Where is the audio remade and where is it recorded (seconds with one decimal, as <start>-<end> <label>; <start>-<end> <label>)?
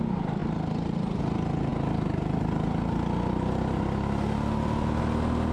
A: 0.0-5.5 recorded